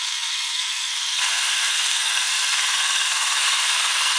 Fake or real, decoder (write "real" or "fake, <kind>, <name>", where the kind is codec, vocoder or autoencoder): fake, codec, SNAC